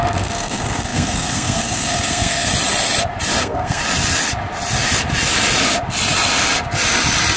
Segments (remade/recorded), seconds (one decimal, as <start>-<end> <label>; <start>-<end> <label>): 0.0-2.5 remade; 2.5-3.4 recorded; 3.4-3.8 remade; 3.8-7.4 recorded